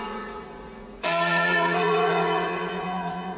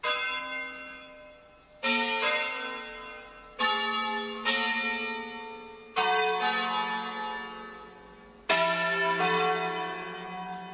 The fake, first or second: first